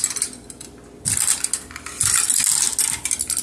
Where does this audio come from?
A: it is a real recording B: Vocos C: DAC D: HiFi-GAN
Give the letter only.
A